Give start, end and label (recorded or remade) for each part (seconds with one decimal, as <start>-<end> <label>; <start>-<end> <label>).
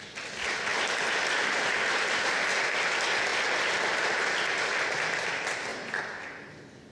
0.0-0.7 recorded; 0.7-2.5 remade; 2.5-5.7 recorded; 5.7-6.5 remade; 6.5-6.9 recorded